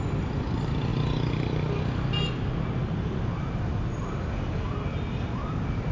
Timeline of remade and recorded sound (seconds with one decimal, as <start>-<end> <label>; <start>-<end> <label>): 0.0-5.9 recorded